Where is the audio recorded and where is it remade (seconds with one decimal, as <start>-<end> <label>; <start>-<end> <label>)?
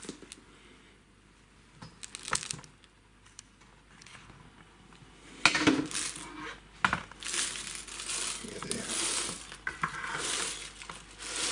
0.0-11.5 recorded